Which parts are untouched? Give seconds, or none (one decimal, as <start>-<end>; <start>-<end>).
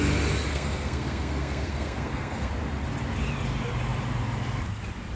0.0-0.5; 2.5-5.2